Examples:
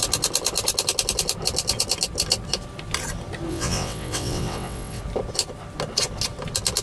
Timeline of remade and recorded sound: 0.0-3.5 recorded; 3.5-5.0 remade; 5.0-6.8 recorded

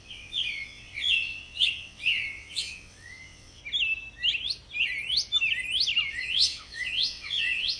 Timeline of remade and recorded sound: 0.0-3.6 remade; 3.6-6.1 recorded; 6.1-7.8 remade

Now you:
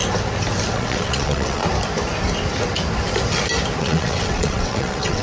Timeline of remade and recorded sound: 0.0-0.7 recorded; 0.7-1.6 remade; 1.6-3.8 recorded; 3.8-5.2 remade

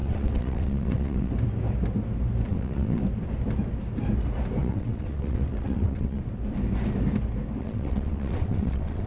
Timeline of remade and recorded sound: 0.0-1.3 remade; 1.3-2.5 recorded; 2.5-3.0 remade; 3.0-4.6 recorded; 4.6-6.2 remade; 6.2-7.6 recorded; 7.6-9.1 remade

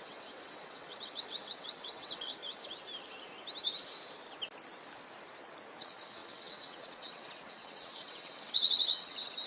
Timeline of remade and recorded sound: 0.0-2.3 remade; 2.3-5.8 recorded; 5.8-9.5 remade

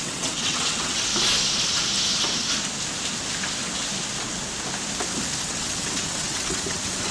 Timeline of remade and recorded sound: 0.0-1.1 remade; 1.1-5.4 recorded; 5.4-7.1 remade

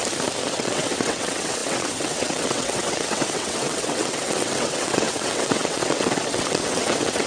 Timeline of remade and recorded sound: 0.0-0.5 recorded; 0.5-7.3 remade